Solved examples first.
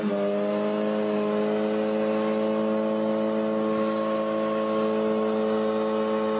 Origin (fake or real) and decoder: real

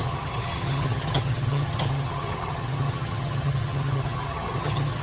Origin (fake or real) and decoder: fake, vocoder, HiFi-GAN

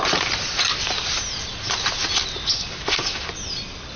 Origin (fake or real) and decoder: real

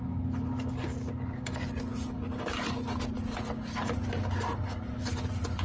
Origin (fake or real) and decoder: real